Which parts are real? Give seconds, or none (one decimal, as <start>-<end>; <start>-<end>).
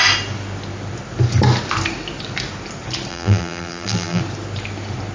0.0-3.1; 4.2-5.1